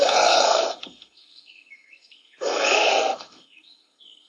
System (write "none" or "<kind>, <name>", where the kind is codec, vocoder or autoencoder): codec, SNAC